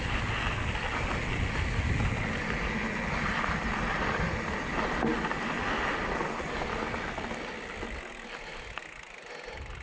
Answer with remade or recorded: recorded